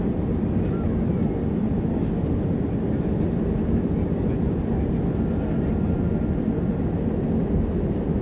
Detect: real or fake real